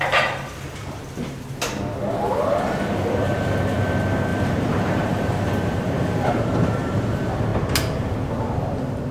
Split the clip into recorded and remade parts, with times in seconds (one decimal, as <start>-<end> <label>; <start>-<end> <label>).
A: 0.0-4.3 recorded; 4.3-5.3 remade; 5.3-9.1 recorded